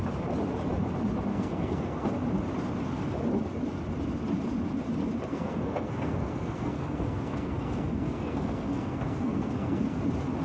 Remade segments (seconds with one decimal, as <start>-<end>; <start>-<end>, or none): 1.3-2.1; 5.3-10.0